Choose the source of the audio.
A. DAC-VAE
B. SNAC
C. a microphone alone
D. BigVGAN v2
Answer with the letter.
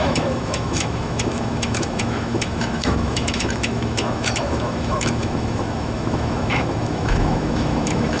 A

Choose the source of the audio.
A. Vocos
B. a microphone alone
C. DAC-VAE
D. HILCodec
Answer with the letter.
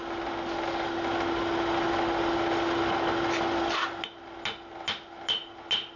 B